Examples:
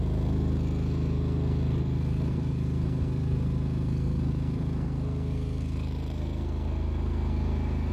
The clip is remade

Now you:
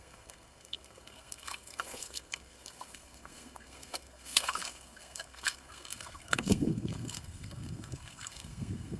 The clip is remade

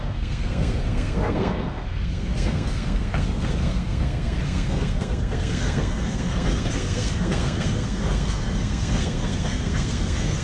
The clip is remade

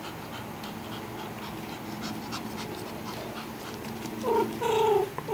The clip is recorded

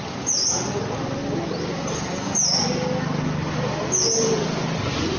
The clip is recorded